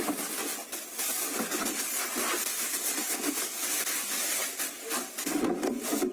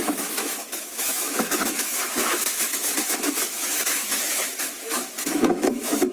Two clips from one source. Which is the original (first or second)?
first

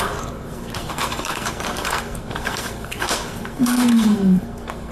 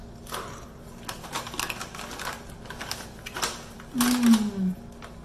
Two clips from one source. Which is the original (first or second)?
second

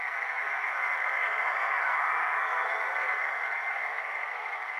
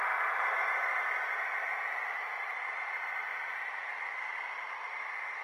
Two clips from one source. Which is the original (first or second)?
second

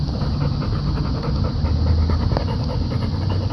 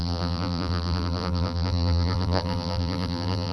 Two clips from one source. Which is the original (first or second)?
first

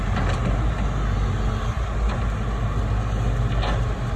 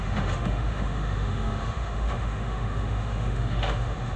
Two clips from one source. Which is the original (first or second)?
first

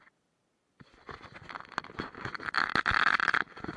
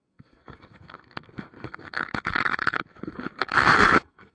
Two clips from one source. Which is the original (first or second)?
first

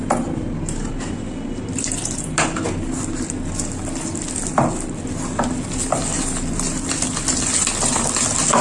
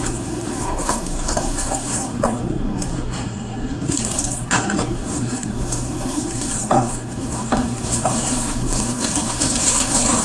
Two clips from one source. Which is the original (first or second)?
first